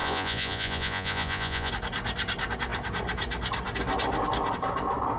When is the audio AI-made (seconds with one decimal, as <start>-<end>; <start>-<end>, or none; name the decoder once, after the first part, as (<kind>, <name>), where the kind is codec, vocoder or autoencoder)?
0.0-1.7 (vocoder, Vocos)